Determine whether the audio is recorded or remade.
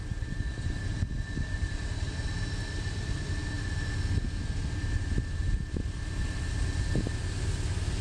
recorded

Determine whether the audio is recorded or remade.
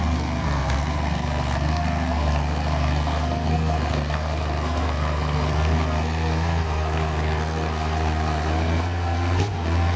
remade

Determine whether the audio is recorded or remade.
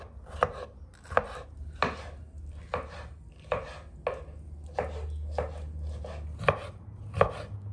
recorded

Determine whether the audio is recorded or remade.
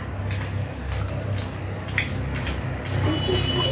recorded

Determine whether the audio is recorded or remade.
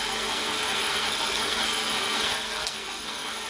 remade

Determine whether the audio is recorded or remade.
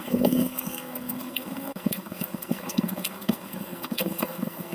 remade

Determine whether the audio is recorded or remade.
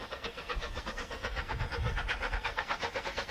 remade